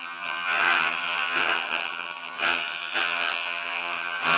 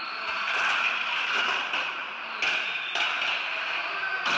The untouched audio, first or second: second